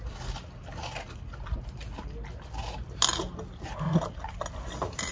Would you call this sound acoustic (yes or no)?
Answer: yes